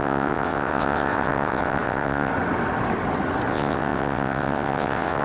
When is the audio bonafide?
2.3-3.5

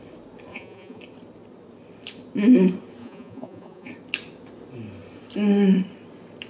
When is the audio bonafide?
0.0-0.5; 1.0-3.0; 3.9-6.5

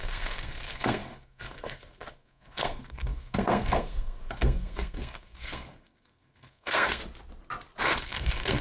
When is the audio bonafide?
7.0-7.8

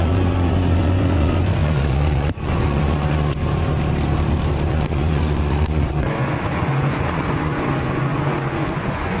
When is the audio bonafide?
3.4-4.7

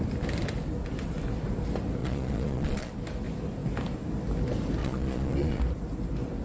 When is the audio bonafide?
0.0-2.0; 2.9-4.8; 5.6-6.4

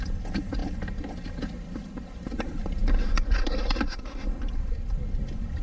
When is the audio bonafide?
0.6-1.3; 2.8-4.0

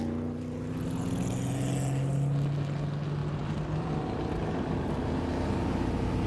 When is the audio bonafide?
0.0-3.2; 5.0-6.3

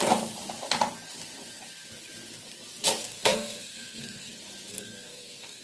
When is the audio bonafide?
0.0-3.0; 4.3-4.7